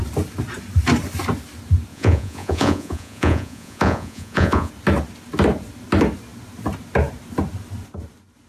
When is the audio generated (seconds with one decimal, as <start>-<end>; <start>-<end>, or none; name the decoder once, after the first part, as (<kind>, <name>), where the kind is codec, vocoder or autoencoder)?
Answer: 1.9-4.7 (vocoder, Vocos)